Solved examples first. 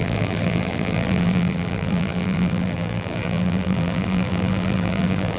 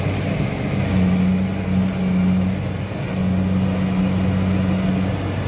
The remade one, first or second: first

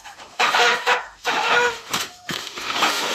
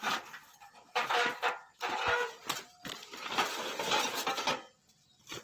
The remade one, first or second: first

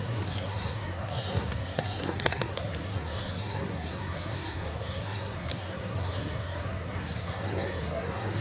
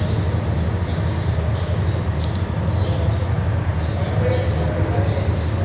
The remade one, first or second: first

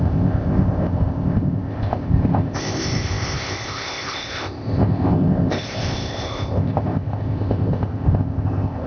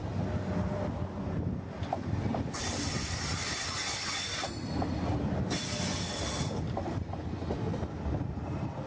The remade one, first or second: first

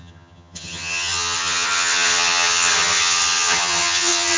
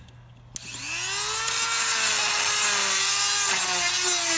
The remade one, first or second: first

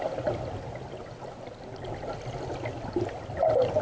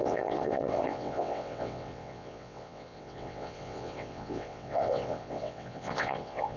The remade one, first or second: second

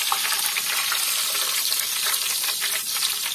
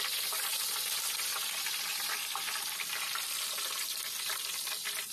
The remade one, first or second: first